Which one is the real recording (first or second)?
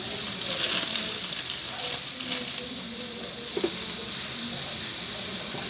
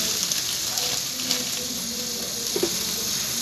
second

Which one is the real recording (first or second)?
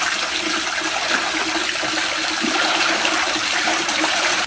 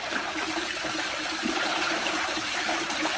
first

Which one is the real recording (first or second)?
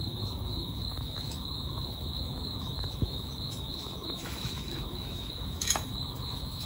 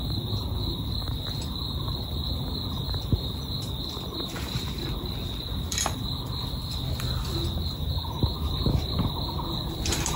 second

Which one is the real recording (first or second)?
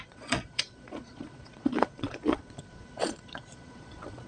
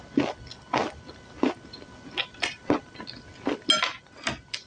second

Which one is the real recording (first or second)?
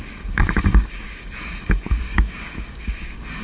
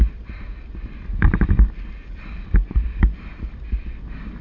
second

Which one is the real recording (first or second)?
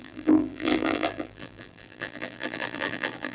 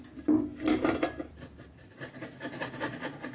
second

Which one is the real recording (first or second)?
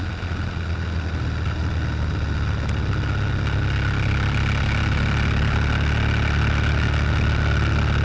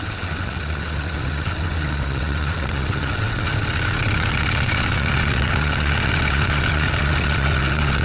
first